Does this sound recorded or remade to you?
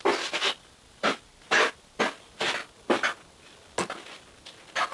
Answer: recorded